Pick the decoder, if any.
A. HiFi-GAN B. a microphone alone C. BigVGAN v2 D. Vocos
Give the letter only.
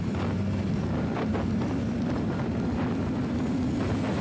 B